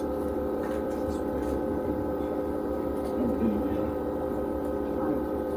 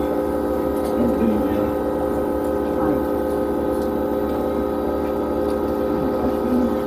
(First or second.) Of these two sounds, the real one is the second